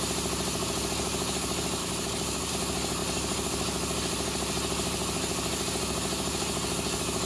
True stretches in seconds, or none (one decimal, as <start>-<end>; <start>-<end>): 0.0-1.8; 2.5-7.3